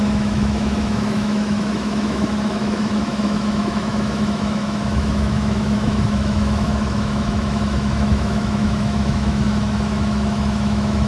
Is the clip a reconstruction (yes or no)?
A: yes